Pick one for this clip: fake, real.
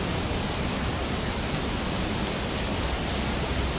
real